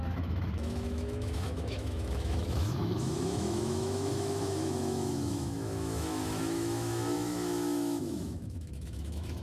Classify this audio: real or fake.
fake